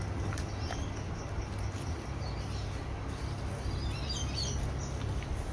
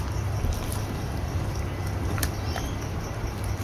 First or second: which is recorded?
first